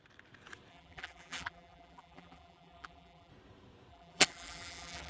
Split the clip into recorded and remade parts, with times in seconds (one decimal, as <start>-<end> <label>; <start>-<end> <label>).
0.0-0.7 recorded; 0.7-3.3 remade; 3.3-3.9 recorded; 3.9-5.1 remade